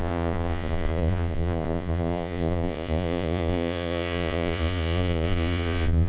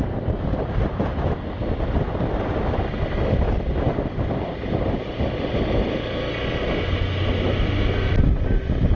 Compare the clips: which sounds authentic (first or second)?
second